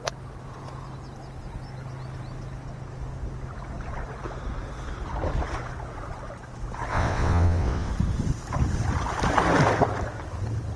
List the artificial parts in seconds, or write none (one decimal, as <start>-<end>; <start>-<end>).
6.9-7.9